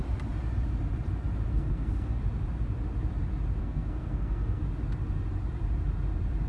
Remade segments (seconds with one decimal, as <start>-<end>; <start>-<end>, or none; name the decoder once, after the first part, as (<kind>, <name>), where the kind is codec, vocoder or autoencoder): 1.5-2.2 (codec, SNAC); 3.6-4.6